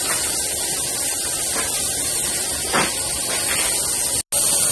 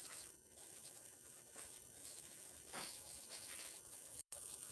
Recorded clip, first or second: first